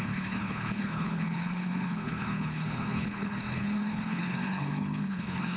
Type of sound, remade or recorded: remade